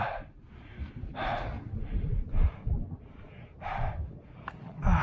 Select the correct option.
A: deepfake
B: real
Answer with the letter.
B